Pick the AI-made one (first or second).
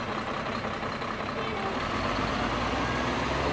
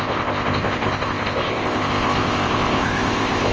second